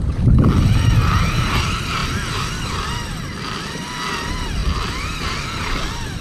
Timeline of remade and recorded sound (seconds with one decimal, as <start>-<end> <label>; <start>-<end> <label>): 0.0-6.2 recorded